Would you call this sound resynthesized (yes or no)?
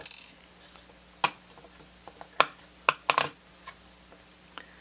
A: no